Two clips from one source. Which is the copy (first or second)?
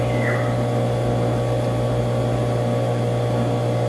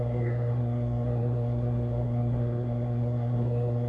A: second